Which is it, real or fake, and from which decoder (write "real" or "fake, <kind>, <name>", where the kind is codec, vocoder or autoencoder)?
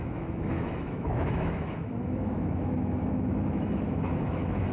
fake, autoencoder, DAC-VAE